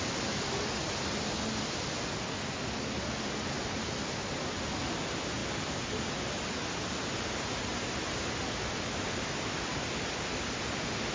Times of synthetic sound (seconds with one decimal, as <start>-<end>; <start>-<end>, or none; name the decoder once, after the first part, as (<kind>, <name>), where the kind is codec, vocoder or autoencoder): none